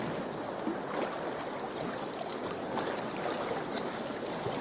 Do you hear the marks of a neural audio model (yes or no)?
no